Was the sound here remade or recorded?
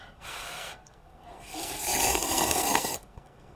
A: remade